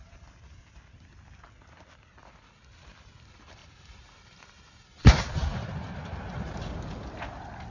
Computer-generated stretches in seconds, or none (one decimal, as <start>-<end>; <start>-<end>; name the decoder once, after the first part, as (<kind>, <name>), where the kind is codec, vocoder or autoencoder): 3.6-6.8 (vocoder, BigVGAN v2)